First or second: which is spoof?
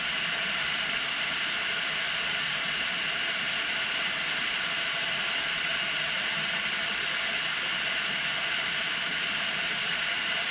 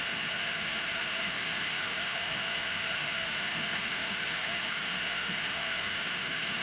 second